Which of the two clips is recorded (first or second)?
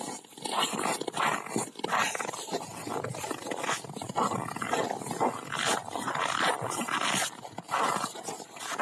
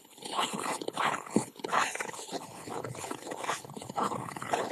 first